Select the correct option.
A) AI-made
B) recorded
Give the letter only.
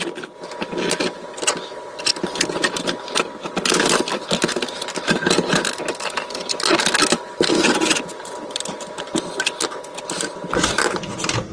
B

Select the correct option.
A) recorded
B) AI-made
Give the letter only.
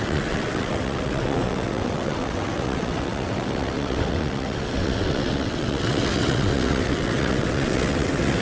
B